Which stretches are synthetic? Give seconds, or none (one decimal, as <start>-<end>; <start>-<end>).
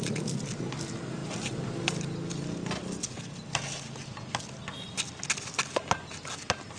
none